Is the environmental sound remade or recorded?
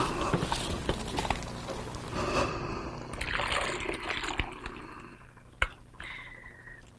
recorded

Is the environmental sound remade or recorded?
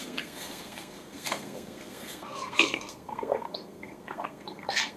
remade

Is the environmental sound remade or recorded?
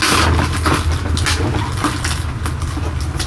recorded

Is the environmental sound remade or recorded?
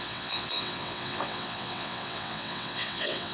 remade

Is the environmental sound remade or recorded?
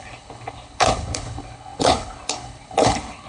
remade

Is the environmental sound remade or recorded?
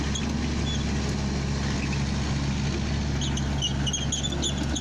recorded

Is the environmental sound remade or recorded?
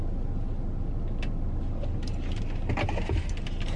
recorded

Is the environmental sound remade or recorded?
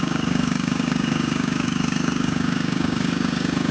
remade